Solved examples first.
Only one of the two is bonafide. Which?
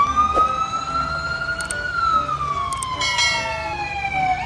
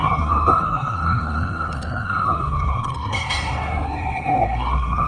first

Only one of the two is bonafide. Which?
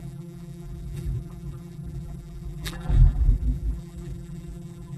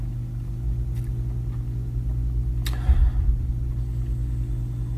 second